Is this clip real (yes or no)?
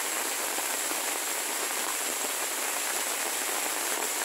yes